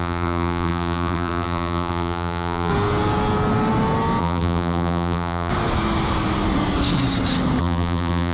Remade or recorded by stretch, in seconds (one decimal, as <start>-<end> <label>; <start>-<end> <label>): 0.0-2.7 remade; 2.7-4.2 recorded; 4.2-5.5 remade; 5.5-7.6 recorded; 7.6-8.3 remade